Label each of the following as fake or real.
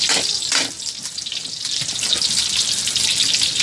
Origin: real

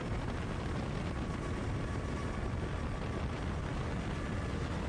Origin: real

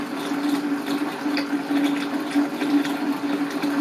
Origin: real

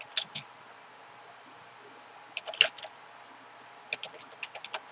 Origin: real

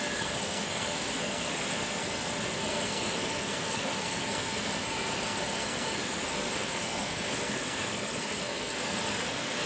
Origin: fake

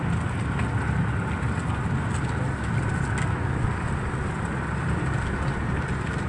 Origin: real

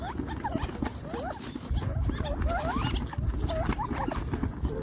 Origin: real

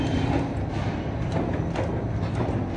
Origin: real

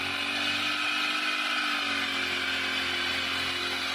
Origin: real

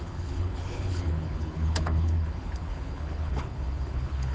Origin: fake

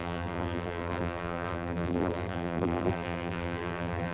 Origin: fake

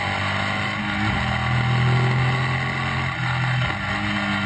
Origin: real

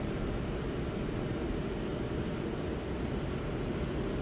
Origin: real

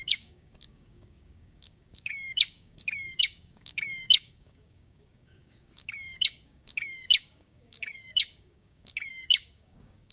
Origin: fake